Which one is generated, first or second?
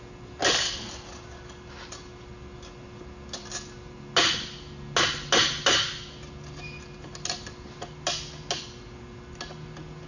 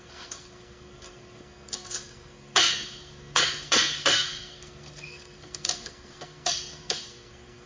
second